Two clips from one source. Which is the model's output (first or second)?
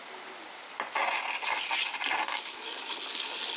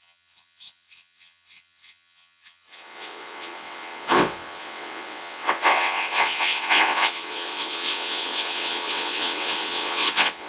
second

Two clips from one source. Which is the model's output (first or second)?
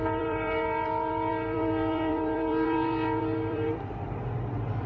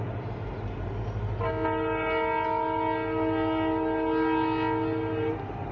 first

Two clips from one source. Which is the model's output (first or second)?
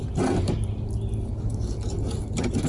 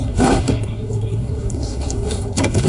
second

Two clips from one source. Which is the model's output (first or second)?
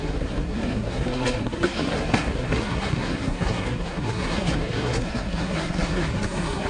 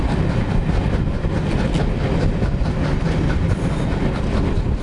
first